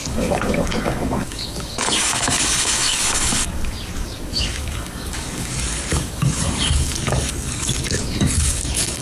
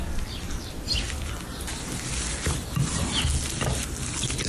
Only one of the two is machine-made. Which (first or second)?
first